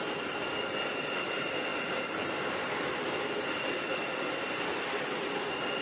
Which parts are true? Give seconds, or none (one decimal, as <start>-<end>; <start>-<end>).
0.0-5.8